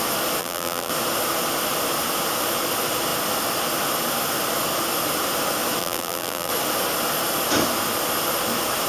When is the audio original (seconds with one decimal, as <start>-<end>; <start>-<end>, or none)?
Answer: 0.0-0.4; 0.9-5.8; 6.5-8.9